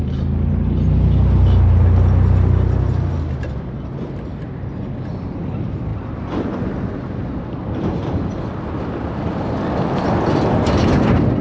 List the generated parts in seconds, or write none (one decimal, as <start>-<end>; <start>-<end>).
none